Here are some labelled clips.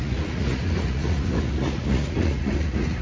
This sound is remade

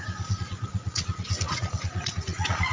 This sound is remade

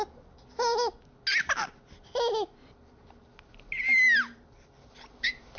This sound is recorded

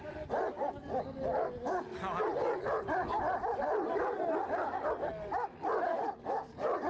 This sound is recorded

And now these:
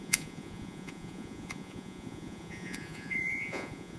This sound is remade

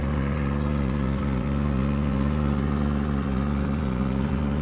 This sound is remade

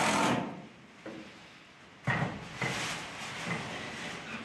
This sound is recorded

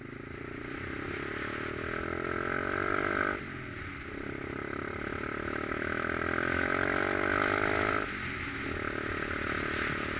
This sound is recorded